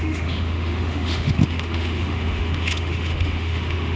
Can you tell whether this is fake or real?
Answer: fake